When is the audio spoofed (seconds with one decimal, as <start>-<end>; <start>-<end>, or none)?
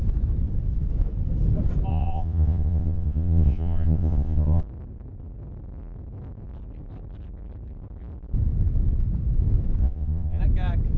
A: 1.9-4.6; 9.8-10.4